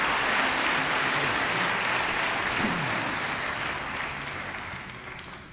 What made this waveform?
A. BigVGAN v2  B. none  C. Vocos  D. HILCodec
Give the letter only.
B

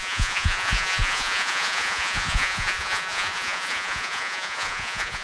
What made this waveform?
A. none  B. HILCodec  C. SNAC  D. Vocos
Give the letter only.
D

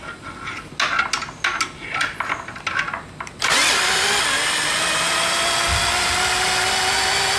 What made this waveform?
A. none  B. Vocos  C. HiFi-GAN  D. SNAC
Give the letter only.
A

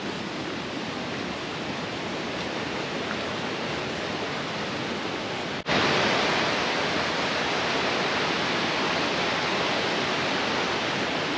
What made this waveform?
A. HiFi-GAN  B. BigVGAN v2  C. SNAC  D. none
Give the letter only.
D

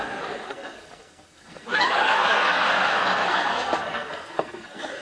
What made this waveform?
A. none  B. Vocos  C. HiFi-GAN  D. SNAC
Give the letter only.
D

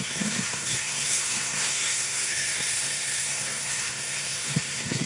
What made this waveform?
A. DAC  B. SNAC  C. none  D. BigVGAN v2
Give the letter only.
B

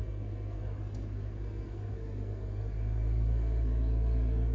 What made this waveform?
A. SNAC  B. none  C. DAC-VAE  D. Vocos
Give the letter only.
A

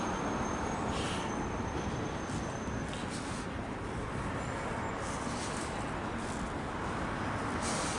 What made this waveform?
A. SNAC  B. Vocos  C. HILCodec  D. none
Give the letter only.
D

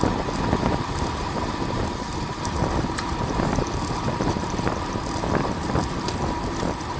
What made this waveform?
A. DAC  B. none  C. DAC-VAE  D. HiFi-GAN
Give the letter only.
B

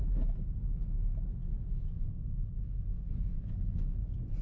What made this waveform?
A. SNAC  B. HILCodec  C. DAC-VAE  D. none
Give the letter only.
D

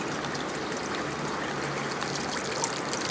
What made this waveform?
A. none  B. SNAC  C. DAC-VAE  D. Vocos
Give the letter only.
A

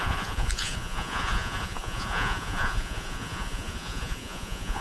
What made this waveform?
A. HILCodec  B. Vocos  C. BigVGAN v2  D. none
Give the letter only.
B